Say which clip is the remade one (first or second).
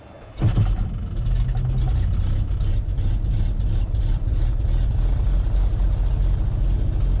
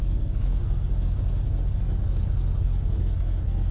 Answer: second